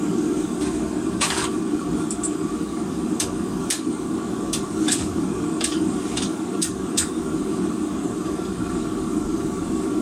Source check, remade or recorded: remade